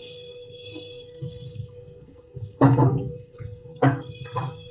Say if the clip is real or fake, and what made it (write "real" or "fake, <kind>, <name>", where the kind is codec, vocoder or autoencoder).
fake, codec, SNAC